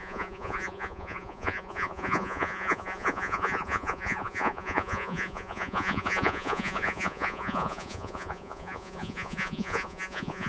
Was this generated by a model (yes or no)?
yes